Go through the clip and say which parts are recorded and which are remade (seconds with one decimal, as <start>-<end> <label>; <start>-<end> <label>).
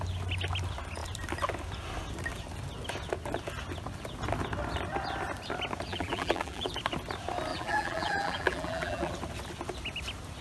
0.0-5.9 recorded; 5.9-6.7 remade; 6.7-7.5 recorded; 7.5-9.1 remade; 9.1-10.4 recorded